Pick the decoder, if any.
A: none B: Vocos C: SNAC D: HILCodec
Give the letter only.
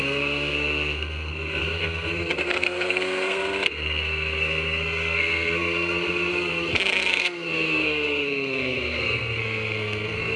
C